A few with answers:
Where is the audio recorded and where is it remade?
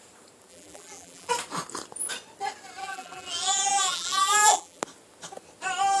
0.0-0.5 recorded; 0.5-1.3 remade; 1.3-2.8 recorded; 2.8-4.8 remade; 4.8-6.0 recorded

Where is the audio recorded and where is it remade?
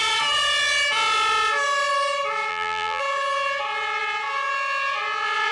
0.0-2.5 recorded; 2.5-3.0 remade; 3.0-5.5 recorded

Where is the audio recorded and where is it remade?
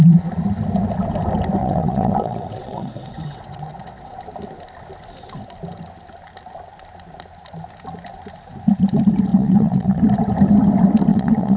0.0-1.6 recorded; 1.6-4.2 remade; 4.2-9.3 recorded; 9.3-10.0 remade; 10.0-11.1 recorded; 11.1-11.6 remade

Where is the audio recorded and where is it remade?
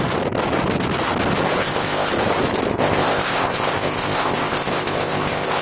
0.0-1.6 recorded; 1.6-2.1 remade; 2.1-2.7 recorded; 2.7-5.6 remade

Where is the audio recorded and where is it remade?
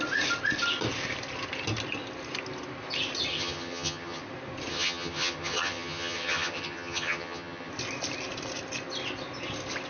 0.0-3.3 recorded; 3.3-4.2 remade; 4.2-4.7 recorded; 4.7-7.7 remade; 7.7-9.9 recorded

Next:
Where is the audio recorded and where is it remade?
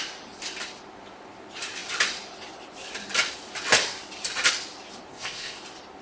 0.0-5.1 recorded; 5.1-5.6 remade; 5.6-6.0 recorded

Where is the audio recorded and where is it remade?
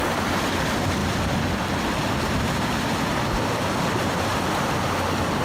0.0-5.4 recorded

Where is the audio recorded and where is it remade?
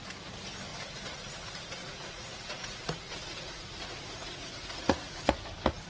0.0-1.8 recorded; 1.8-5.3 remade; 5.3-5.9 recorded